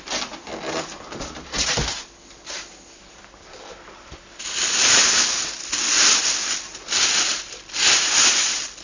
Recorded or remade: recorded